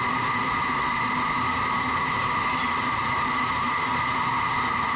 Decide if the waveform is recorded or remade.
recorded